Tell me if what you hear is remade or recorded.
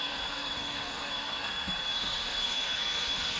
remade